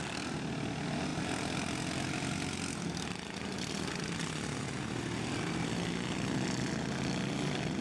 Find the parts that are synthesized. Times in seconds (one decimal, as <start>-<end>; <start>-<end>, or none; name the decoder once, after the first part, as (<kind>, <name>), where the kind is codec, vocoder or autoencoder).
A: none